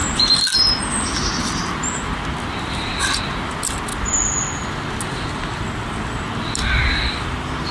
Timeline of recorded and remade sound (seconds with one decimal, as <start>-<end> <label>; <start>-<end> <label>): 0.0-7.7 recorded